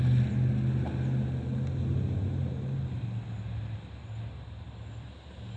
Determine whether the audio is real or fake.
real